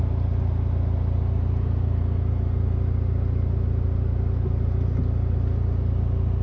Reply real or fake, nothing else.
real